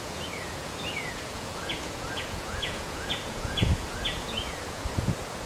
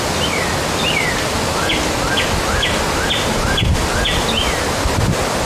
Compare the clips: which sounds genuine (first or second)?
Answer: second